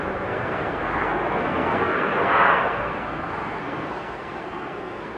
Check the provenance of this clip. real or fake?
fake